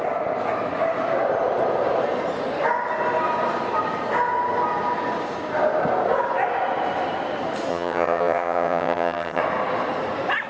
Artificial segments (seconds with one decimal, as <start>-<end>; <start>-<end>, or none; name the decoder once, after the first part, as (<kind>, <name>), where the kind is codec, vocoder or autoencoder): 7.7-9.4 (vocoder, HiFi-GAN)